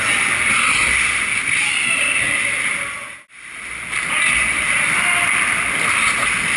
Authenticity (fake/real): real